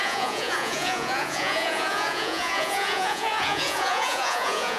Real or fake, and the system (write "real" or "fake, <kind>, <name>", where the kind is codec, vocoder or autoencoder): fake, vocoder, Vocos